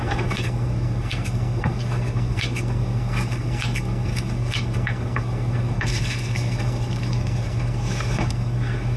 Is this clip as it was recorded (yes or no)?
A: no